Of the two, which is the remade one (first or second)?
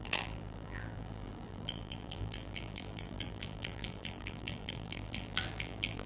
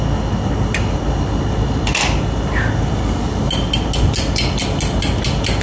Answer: first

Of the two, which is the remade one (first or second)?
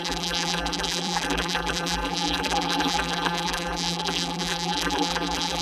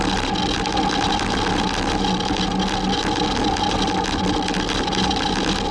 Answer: first